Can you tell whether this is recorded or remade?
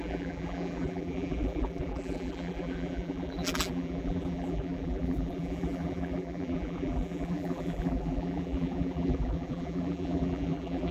remade